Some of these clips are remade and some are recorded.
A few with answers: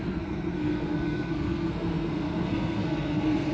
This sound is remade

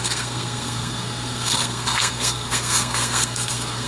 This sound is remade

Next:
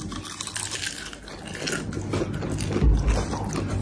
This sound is recorded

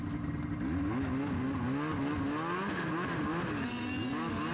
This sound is recorded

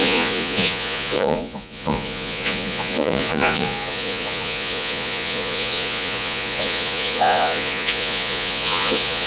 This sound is remade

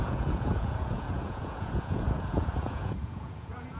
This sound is remade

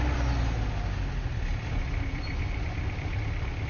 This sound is recorded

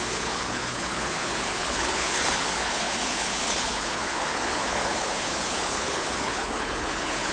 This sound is remade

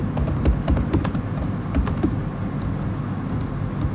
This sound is recorded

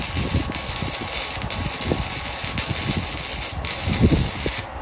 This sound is recorded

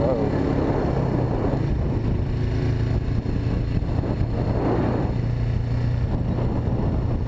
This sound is recorded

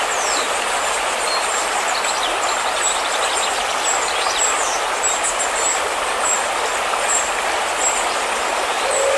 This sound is recorded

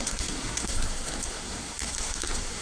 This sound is remade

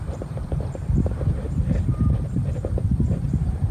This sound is remade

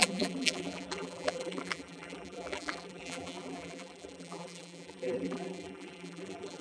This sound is remade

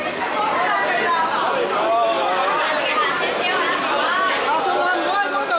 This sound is recorded